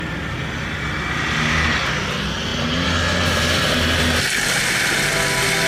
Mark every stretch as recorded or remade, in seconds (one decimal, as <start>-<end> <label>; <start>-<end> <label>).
0.0-5.7 recorded